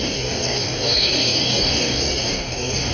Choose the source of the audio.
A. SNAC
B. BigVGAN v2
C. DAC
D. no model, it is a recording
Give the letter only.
C